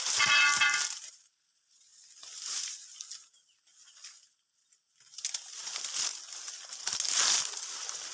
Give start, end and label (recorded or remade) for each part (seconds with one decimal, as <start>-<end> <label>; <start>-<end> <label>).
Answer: 0.0-8.1 recorded